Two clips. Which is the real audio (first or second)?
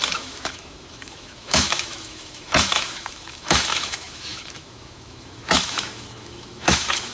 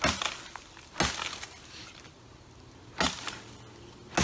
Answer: second